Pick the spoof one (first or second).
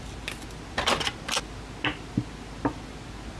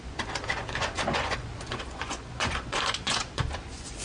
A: second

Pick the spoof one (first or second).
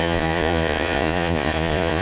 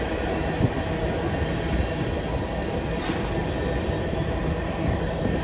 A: first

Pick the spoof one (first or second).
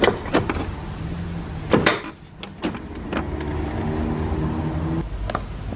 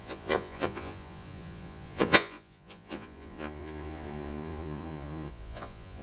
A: second